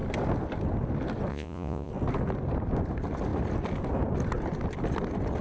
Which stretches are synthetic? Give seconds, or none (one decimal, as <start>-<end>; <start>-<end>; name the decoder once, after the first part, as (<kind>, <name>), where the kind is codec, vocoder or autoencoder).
1.3-1.9 (vocoder, Vocos)